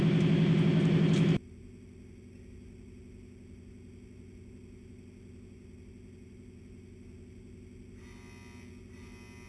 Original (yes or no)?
yes